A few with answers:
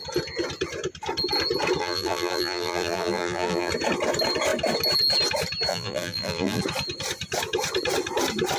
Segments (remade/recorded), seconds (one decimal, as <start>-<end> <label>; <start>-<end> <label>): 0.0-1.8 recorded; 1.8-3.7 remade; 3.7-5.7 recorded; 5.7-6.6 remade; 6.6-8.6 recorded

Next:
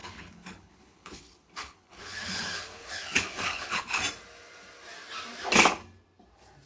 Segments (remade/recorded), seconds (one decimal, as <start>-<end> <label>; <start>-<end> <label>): 0.0-4.0 remade; 4.0-6.7 recorded

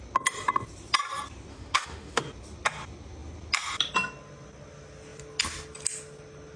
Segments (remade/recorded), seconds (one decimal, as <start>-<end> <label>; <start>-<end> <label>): 0.0-1.5 recorded; 1.5-2.2 remade; 2.2-6.6 recorded

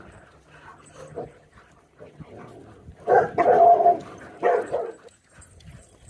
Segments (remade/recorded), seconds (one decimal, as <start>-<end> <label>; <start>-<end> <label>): 0.0-6.1 recorded